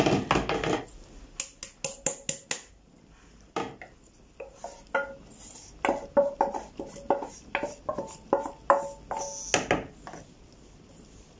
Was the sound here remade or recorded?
recorded